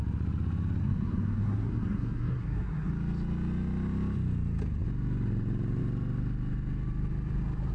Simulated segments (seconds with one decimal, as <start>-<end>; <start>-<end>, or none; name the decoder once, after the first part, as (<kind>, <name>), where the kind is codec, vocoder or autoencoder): 0.8-2.9 (codec, SNAC)